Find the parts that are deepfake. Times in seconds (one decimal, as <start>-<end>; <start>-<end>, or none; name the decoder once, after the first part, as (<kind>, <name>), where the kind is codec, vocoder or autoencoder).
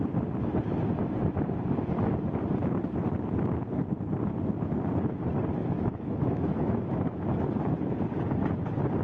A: 5.6-7.2 (autoencoder, DAC-VAE)